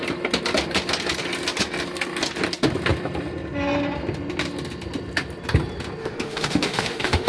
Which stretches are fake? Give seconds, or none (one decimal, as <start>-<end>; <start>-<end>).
6.0-7.3